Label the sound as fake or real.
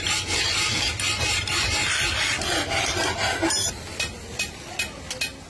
real